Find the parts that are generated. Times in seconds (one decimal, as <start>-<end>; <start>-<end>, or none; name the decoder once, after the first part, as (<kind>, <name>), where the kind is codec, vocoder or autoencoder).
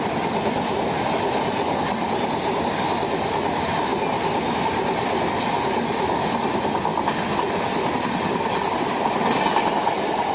none